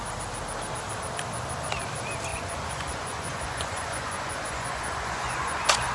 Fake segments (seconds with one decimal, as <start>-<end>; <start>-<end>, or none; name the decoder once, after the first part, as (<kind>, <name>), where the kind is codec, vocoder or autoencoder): 2.3-5.9 (vocoder, Vocos)

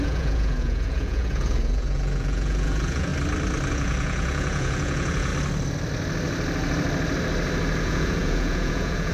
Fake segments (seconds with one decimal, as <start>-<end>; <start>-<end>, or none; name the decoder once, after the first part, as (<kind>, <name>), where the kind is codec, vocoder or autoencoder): 0.0-3.1 (vocoder, Vocos); 3.7-5.3; 7.8-9.1

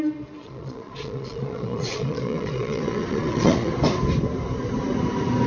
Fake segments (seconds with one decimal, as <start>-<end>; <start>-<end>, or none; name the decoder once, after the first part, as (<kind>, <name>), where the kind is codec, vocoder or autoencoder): 0.4-3.7 (vocoder, Vocos)